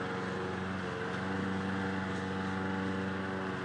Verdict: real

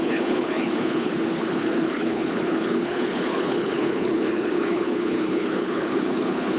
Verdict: fake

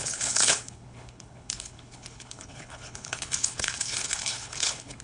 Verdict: fake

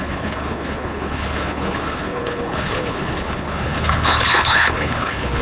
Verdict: fake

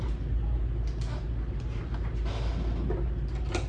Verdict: real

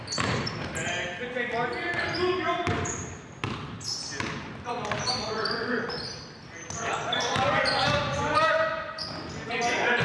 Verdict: real